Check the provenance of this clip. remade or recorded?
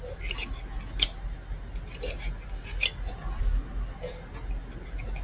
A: recorded